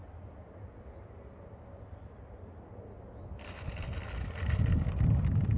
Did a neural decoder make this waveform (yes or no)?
no